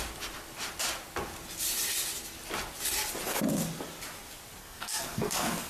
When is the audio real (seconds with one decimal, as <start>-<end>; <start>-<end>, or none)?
0.0-4.6

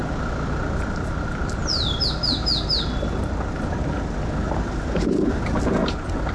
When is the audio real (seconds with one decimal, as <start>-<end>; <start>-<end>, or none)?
0.0-6.3

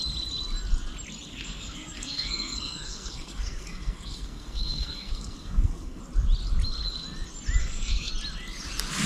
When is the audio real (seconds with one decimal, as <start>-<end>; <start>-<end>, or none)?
0.0-1.3; 6.0-7.6; 8.1-9.1